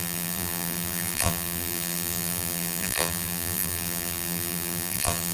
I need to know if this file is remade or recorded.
remade